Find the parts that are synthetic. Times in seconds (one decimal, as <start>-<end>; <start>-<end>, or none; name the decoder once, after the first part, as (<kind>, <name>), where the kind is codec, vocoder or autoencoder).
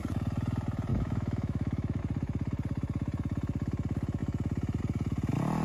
0.9-2.0 (autoencoder, DAC-VAE)